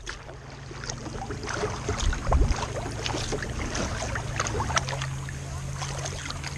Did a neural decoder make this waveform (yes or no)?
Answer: no